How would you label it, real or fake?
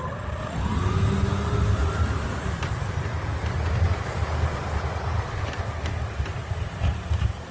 real